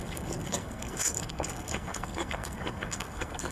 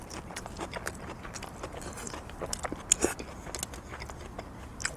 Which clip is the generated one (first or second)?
first